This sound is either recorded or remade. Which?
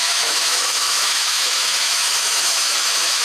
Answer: remade